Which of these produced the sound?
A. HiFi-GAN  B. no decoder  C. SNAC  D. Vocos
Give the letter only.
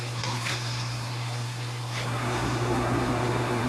C